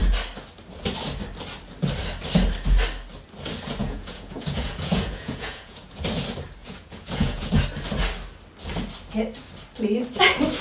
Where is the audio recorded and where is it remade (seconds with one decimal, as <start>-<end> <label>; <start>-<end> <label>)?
0.0-3.8 recorded; 3.8-6.0 remade; 6.0-6.6 recorded; 6.6-7.6 remade; 7.6-10.6 recorded